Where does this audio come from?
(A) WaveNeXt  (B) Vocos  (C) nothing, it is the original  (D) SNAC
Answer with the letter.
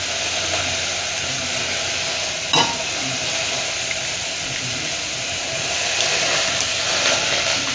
C